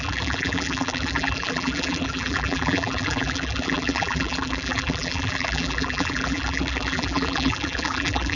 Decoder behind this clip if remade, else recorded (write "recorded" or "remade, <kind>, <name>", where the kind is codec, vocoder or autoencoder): remade, vocoder, BigVGAN v2